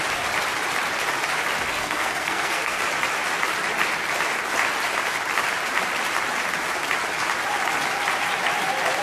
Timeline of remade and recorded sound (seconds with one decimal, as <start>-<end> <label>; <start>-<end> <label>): 0.0-1.8 recorded; 1.8-2.8 remade; 2.8-9.0 recorded